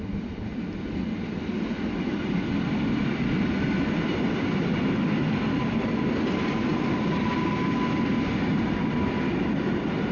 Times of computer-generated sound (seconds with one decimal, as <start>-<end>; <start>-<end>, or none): none